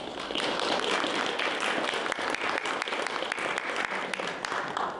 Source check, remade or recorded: recorded